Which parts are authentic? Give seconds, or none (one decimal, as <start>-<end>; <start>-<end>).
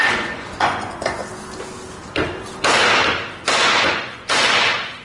1.2-3.5